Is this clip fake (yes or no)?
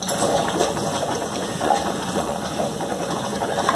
yes